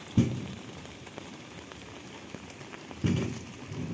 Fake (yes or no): no